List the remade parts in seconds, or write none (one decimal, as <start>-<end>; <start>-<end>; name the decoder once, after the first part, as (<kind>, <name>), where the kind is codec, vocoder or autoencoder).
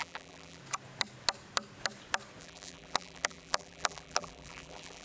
0.0-0.6 (vocoder, BigVGAN v2); 2.4-5.0